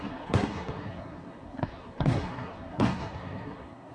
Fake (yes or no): yes